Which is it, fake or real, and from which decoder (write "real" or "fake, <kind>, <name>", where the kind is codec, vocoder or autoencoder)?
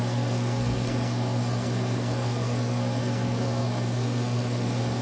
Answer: fake, codec, SNAC